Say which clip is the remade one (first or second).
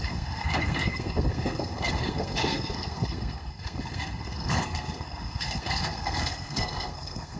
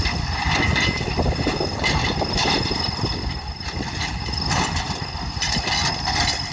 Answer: first